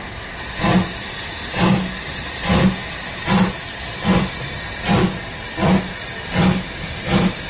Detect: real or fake real